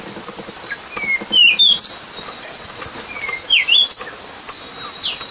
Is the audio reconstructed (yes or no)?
no